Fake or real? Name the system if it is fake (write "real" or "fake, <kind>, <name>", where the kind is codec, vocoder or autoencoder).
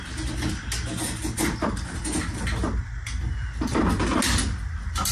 real